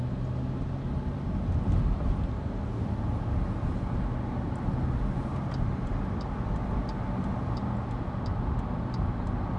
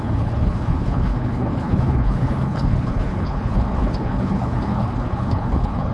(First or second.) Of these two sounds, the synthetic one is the second